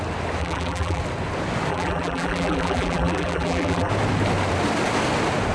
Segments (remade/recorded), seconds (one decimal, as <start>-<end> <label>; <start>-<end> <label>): 0.0-0.4 recorded; 0.4-1.0 remade; 1.0-1.7 recorded; 1.7-3.9 remade; 3.9-5.5 recorded